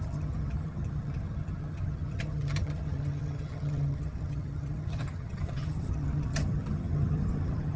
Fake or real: fake